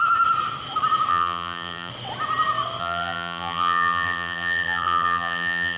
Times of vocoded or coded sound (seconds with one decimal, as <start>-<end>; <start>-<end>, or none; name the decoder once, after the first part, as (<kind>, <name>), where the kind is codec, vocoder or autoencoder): 1.1-1.9 (vocoder, BigVGAN v2); 2.8-5.8